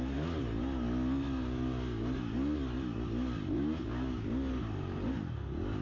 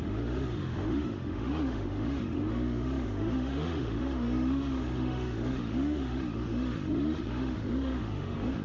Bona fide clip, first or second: first